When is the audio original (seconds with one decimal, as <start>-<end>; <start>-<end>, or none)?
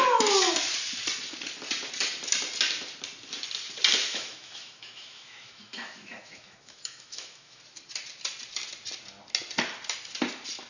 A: 0.0-4.0; 7.6-10.7